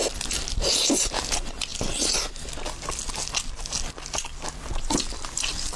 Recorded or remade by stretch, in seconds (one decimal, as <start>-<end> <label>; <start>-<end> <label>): 0.0-5.8 recorded